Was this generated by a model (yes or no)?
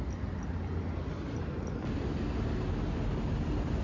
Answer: no